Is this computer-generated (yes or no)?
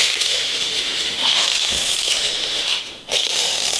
yes